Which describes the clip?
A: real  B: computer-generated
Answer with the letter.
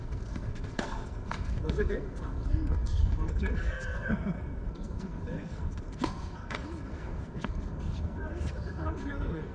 B